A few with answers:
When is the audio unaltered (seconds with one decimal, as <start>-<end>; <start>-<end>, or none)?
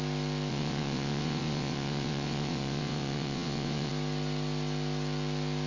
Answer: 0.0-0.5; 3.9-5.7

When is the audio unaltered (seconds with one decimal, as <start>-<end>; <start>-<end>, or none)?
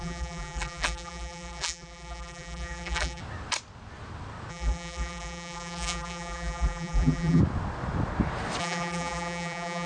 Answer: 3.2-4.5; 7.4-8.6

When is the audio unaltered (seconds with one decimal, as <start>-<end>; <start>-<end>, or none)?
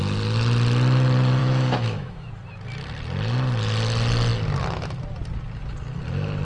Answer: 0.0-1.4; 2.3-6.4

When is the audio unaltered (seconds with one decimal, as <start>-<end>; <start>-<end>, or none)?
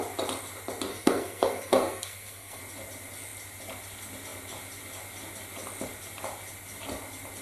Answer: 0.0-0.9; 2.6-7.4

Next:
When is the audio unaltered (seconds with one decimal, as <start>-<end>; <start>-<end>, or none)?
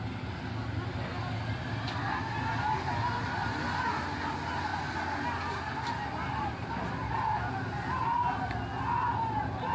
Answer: 0.0-9.7